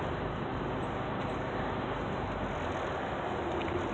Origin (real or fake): real